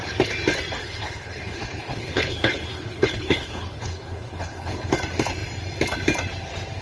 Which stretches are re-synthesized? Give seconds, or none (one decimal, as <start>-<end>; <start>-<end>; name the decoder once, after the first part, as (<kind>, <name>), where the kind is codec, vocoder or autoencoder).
0.8-4.9 (codec, HILCodec)